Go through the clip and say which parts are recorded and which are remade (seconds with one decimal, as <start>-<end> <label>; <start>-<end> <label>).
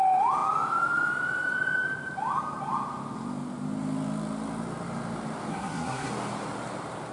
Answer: 0.0-5.5 recorded; 5.5-6.1 remade; 6.1-7.1 recorded